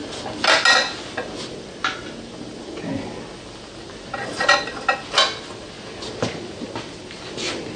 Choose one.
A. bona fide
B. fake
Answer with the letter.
A